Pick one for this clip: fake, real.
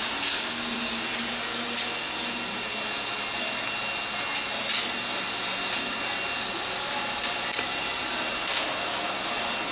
real